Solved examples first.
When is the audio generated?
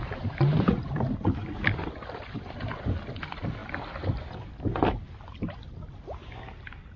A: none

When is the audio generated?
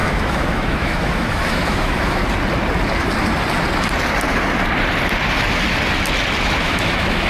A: 0.0-2.2 (autoencoder, DAC-VAE); 6.6-7.3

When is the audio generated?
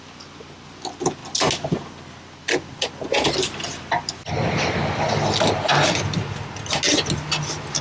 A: none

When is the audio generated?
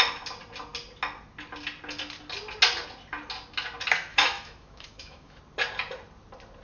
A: 4.1-5.4 (autoencoder, DAC-VAE)